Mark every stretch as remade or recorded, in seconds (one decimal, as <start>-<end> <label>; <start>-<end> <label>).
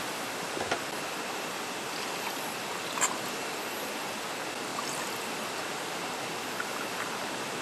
0.0-7.6 recorded